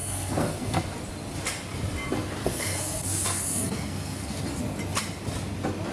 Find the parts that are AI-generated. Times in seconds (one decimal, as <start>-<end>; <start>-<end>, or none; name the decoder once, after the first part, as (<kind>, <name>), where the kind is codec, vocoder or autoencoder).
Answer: 0.0-0.8 (codec, SNAC); 2.4-4.6